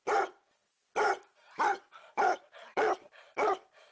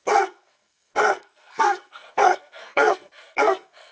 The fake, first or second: second